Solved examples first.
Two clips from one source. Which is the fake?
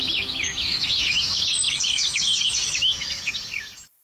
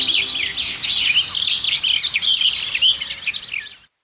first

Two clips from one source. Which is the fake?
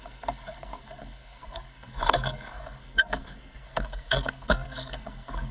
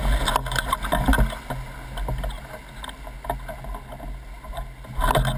first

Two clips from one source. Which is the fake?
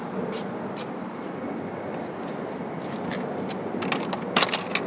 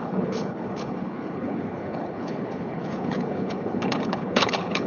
second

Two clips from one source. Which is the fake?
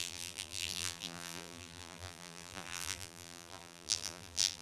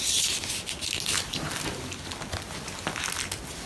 first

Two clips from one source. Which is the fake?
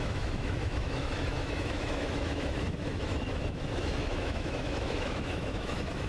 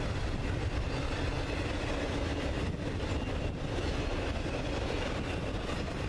first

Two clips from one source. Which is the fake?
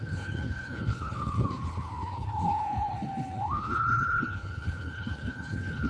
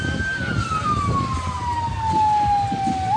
first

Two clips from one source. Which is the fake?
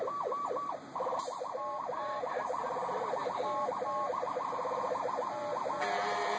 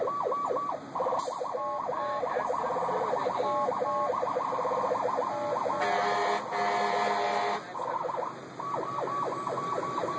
first